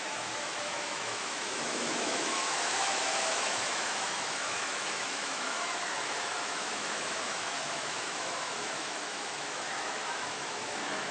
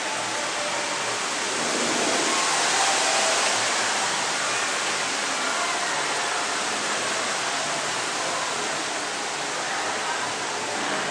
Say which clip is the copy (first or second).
first